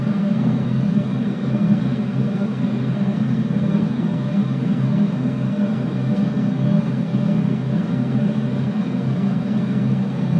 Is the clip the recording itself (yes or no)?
no